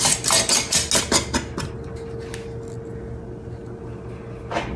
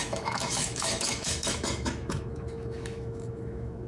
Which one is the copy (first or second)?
second